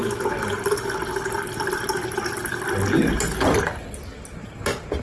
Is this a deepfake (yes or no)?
no